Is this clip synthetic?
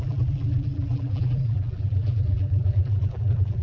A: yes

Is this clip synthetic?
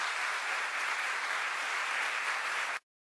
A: yes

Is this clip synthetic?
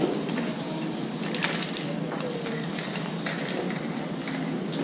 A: no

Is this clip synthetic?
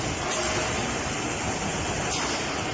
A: no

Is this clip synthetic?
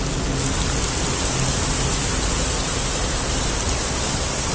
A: no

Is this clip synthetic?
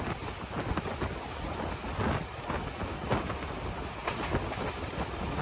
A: no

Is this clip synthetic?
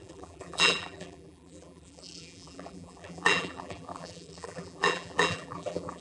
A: yes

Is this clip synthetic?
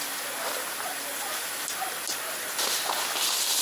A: no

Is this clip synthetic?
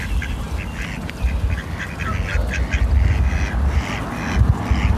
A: no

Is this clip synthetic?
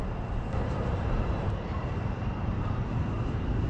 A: yes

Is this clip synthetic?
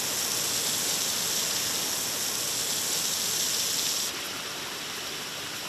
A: no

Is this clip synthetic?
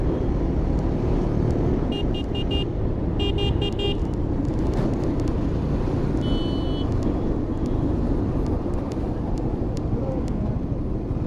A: no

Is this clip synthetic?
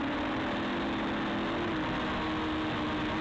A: no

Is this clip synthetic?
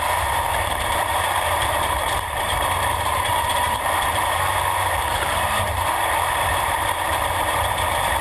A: yes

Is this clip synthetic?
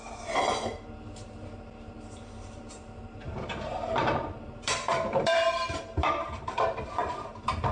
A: yes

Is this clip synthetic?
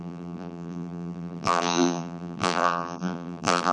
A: yes